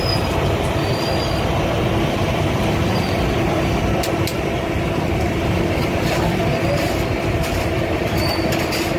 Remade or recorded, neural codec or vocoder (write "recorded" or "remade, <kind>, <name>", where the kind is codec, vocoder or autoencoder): remade, vocoder, BigVGAN v2